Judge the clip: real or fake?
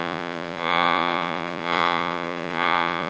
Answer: fake